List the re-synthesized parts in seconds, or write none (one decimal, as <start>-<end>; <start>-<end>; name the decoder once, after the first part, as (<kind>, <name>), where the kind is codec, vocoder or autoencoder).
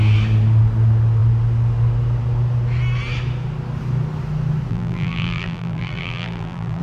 4.7-6.8 (vocoder, BigVGAN v2)